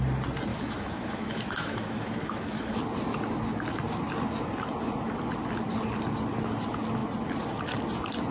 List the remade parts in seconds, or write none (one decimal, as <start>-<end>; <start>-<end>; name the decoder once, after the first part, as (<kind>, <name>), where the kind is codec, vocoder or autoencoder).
0.5-2.8 (autoencoder, DAC-VAE)